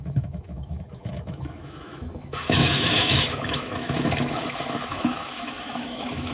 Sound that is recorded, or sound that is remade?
remade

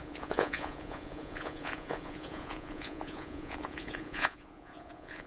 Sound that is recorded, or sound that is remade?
remade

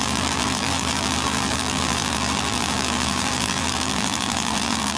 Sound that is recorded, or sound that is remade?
remade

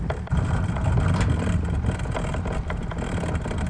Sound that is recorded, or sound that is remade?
recorded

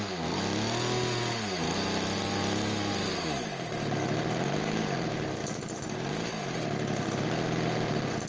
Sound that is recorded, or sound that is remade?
recorded